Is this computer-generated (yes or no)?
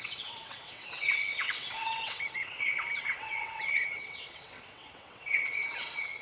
yes